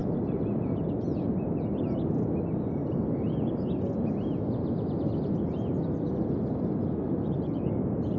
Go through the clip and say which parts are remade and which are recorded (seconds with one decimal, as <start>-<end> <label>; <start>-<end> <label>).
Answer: 0.0-8.2 recorded